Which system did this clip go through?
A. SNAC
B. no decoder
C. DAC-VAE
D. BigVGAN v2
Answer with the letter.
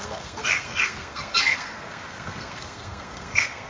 A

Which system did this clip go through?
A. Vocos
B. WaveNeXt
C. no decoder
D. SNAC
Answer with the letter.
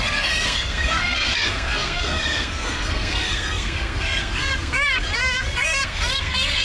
D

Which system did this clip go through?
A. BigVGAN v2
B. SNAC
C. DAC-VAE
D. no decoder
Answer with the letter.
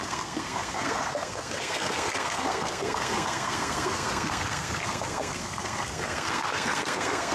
B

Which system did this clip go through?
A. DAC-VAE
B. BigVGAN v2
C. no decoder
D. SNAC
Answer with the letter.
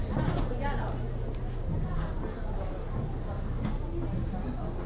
C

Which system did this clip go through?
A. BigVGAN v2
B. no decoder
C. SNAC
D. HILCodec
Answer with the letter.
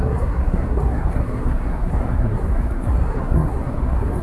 C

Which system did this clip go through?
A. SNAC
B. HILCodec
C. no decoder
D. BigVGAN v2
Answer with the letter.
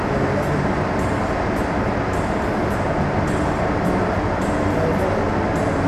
C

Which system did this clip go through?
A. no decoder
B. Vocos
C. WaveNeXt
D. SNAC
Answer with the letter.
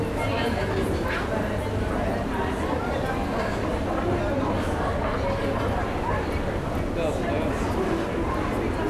A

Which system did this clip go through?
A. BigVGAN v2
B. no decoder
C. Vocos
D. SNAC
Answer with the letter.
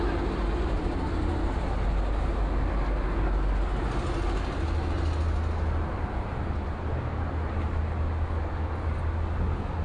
B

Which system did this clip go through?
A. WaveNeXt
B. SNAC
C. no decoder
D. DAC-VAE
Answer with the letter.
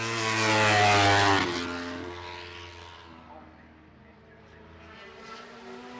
C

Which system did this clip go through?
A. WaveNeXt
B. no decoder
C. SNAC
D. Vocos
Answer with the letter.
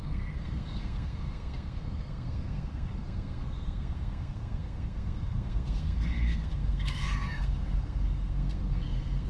C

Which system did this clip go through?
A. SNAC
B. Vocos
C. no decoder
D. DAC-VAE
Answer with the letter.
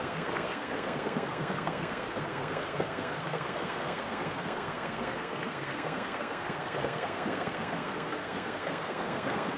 A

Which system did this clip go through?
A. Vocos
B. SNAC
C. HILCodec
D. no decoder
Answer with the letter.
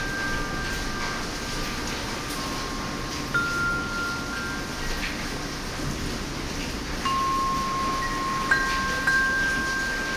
D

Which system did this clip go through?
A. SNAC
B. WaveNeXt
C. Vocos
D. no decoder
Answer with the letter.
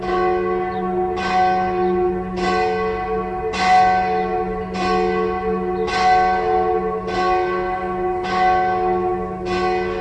D